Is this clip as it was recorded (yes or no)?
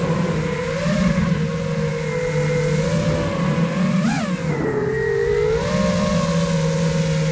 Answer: yes